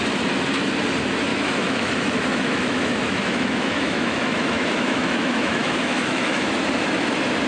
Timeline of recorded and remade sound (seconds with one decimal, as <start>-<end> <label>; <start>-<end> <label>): 0.0-1.3 recorded; 1.3-1.9 remade; 1.9-2.3 recorded; 2.3-6.5 remade; 6.5-7.5 recorded